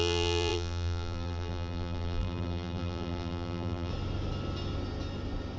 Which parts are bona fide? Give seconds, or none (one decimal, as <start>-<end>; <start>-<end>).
3.9-5.6